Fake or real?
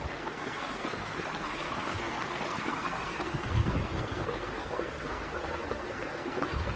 fake